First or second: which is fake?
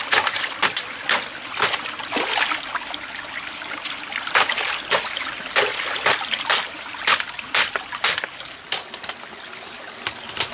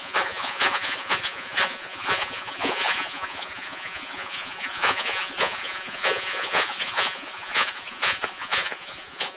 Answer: second